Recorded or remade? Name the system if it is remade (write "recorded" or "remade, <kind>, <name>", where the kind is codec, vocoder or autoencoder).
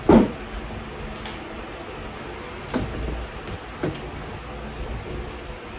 recorded